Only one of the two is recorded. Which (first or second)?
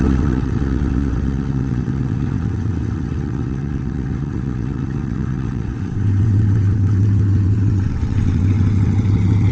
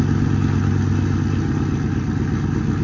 second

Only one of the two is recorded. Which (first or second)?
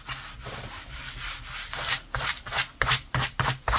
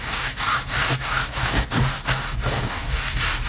first